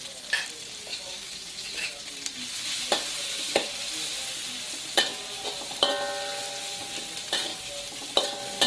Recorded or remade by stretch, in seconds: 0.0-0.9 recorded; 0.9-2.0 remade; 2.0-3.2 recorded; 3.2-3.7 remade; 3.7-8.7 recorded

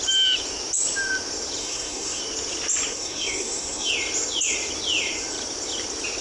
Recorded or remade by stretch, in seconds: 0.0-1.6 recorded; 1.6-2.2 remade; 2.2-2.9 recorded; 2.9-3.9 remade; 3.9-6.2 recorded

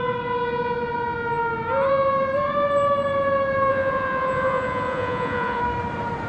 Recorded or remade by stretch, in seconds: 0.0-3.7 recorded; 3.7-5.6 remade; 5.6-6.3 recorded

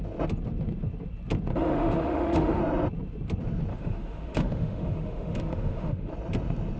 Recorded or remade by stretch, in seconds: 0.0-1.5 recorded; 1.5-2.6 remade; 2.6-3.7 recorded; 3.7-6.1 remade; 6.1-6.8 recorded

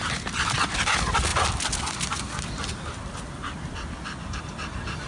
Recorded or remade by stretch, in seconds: 0.0-5.1 recorded

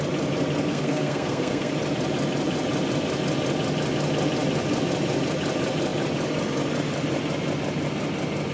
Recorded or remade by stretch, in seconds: 0.0-0.7 recorded; 0.7-1.7 remade; 1.7-8.5 recorded

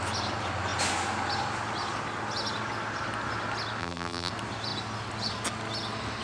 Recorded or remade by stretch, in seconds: 0.0-3.8 recorded; 3.8-4.3 remade; 4.3-6.2 recorded

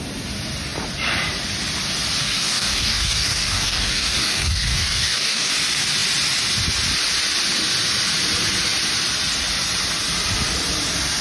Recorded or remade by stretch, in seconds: 0.0-2.2 recorded; 2.2-5.5 remade; 5.5-11.2 recorded